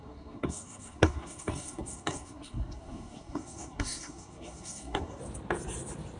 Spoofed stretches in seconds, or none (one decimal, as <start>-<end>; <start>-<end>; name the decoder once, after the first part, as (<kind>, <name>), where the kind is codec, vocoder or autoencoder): 0.0-5.2 (codec, SNAC)